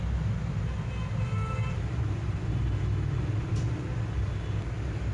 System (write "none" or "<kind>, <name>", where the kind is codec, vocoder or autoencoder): none